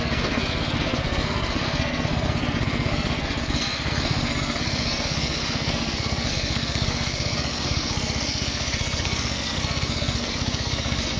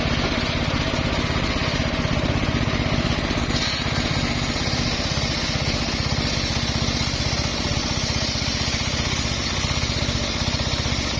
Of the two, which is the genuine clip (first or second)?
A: second